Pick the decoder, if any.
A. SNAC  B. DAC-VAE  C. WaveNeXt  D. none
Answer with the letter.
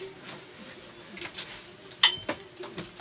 D